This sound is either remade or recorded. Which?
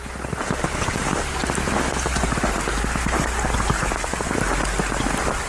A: recorded